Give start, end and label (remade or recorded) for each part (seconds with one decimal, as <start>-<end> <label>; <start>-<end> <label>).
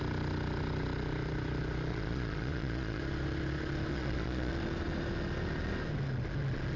0.0-1.9 recorded; 1.9-3.0 remade; 3.0-3.9 recorded; 3.9-4.5 remade; 4.5-6.8 recorded